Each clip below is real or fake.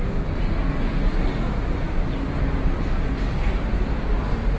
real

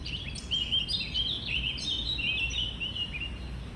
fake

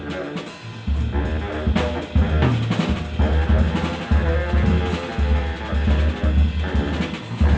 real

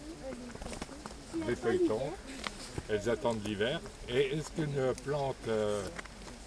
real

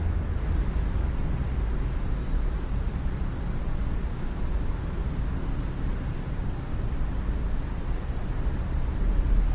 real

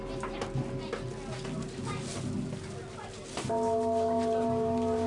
real